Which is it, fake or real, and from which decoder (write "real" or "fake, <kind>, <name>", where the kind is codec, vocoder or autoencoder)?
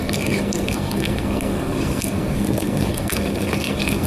fake, codec, SNAC